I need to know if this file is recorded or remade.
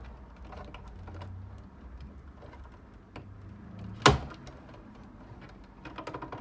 recorded